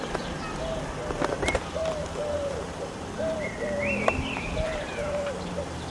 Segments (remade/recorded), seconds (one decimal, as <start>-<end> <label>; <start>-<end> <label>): 0.0-1.8 recorded; 1.8-5.3 remade; 5.3-5.9 recorded